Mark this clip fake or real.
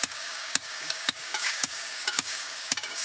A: fake